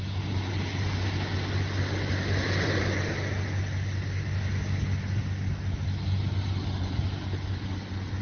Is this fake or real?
real